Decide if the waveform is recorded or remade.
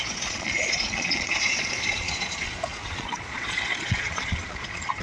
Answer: remade